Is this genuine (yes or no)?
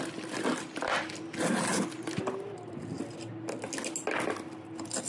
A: yes